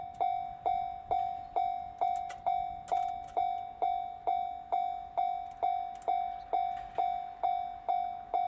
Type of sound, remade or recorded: recorded